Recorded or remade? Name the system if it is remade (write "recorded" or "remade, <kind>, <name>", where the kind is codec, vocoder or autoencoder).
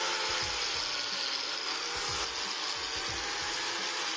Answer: recorded